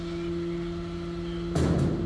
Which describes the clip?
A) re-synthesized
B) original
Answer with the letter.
B